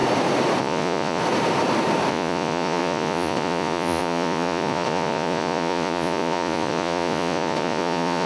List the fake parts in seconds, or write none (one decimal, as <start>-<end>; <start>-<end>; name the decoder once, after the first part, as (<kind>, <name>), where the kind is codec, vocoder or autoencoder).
0.6-1.2 (vocoder, Vocos); 2.1-8.3